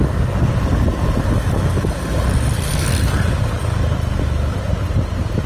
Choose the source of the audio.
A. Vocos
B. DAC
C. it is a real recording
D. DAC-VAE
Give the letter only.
C